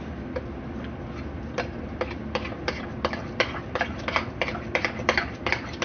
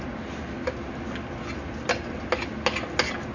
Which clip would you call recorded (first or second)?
second